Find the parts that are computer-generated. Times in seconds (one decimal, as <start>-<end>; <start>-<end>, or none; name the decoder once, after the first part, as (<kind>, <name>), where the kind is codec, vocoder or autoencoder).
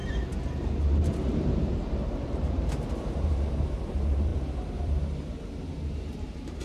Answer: 0.0-6.6 (vocoder, BigVGAN v2)